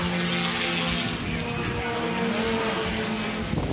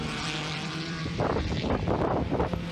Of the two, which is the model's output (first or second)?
second